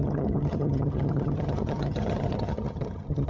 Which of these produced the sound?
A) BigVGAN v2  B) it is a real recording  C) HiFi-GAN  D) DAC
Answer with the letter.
C